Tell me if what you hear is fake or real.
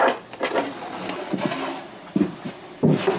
real